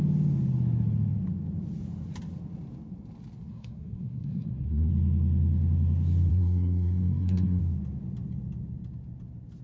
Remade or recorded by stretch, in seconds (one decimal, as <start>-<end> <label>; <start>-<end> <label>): 0.0-3.5 recorded; 3.5-4.9 remade; 4.9-6.3 recorded; 6.3-7.6 remade; 7.6-9.6 recorded